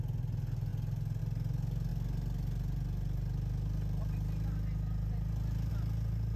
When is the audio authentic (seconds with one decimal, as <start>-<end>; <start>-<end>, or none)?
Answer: 0.0-6.4